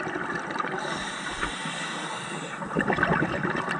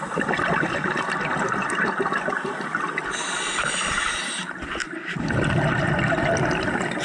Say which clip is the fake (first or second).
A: first